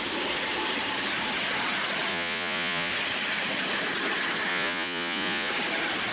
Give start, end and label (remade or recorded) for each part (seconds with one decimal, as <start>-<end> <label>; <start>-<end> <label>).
0.0-2.1 recorded; 2.1-2.9 remade; 2.9-4.5 recorded; 4.5-5.5 remade; 5.5-6.1 recorded